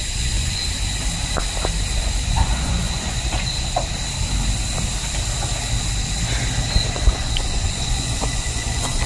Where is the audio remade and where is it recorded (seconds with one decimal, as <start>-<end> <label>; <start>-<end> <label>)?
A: 0.0-0.6 remade; 0.6-1.9 recorded; 1.9-3.8 remade; 3.8-6.9 recorded; 6.9-9.1 remade